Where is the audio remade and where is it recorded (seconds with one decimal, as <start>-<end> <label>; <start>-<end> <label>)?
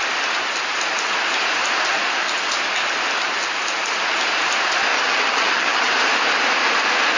0.0-4.9 recorded; 4.9-5.9 remade; 5.9-7.2 recorded